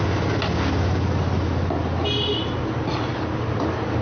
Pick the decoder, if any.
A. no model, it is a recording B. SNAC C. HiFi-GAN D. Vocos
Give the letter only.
A